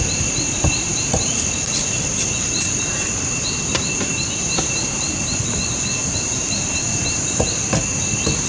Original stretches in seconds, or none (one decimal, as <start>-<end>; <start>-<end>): 0.0-0.9; 5.6-6.0; 7.5-8.5